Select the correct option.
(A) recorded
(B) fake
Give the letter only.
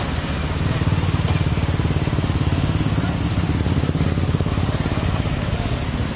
A